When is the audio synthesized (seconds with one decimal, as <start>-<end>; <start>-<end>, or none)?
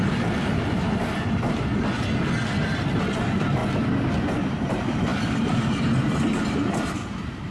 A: 0.0-1.7; 3.2-3.6; 4.2-7.5